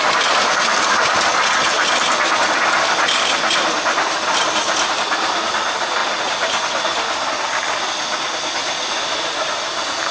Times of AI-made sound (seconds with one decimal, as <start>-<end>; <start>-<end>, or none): none